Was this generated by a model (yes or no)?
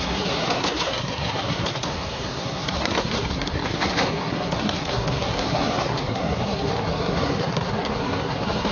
yes